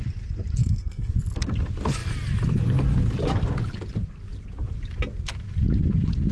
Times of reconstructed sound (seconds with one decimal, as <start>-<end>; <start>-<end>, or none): 0.6-1.1